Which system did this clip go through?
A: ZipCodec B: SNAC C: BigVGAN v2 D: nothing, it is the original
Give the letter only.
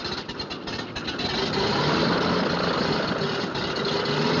D